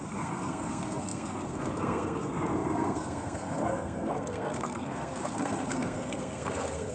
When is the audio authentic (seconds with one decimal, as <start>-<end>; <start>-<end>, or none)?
none